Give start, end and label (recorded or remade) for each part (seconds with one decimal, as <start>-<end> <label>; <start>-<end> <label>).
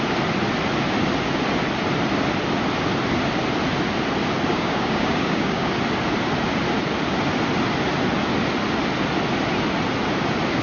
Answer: 0.0-4.5 recorded; 4.5-5.7 remade; 5.7-10.6 recorded